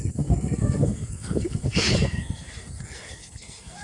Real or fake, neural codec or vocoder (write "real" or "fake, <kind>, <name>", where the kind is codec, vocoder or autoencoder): fake, codec, SNAC